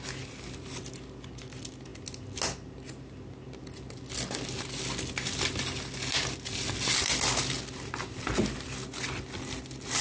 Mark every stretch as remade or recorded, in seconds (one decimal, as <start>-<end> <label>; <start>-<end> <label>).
0.0-10.0 recorded